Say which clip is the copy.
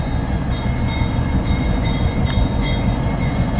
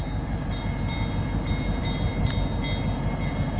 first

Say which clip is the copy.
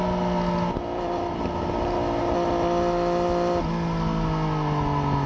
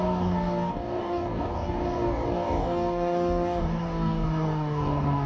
second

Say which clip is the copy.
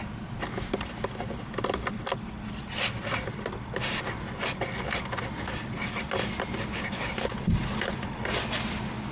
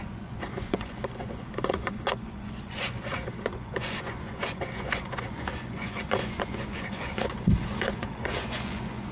second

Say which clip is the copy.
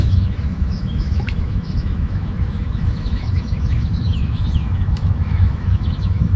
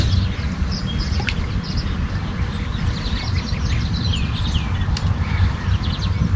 first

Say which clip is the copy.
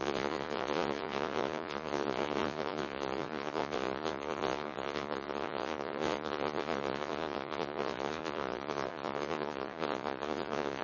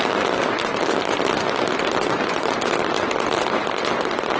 first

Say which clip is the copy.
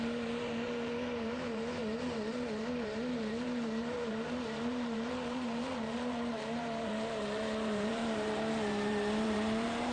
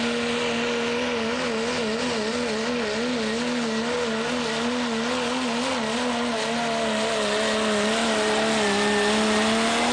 first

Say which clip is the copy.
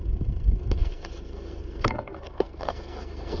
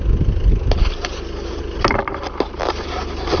first